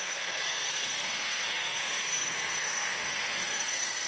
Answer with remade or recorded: remade